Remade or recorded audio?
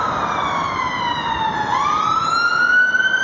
recorded